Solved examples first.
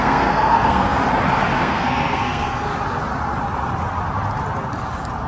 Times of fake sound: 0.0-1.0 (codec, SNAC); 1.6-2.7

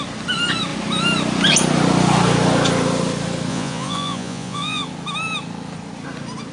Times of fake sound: 3.5-4.8 (vocoder, Vocos)